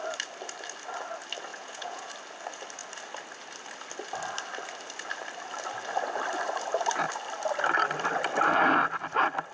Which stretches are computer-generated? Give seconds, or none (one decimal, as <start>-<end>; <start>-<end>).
1.5-2.1